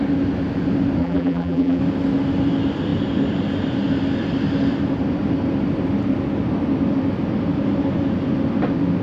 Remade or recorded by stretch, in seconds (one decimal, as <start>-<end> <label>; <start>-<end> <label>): 0.0-1.0 recorded; 1.0-1.8 remade; 1.8-9.0 recorded